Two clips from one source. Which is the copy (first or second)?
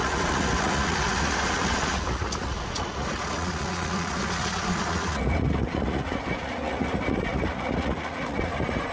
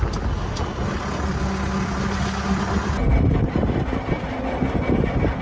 first